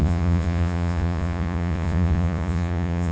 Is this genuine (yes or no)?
no